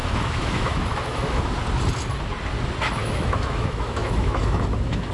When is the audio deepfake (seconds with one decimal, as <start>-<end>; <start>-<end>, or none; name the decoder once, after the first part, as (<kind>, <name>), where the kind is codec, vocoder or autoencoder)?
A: 0.0-1.4 (autoencoder, DAC-VAE); 3.0-5.1